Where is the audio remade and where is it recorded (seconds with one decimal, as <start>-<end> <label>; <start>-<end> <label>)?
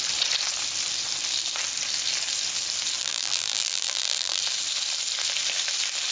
0.0-3.0 recorded; 3.0-4.4 remade; 4.4-6.1 recorded